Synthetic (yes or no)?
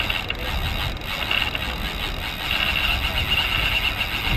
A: no